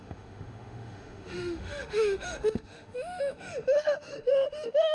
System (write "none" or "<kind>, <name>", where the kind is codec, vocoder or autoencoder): autoencoder, DAC-VAE